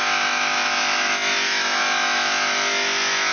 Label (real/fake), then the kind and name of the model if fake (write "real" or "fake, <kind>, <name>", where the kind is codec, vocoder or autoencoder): fake, autoencoder, DAC-VAE